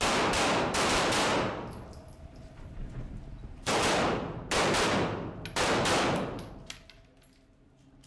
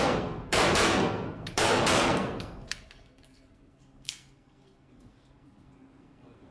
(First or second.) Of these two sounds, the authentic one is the first